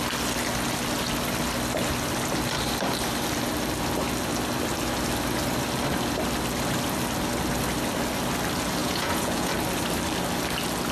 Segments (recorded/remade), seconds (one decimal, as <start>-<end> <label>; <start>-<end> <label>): 0.0-8.8 recorded; 8.8-9.5 remade; 9.5-10.9 recorded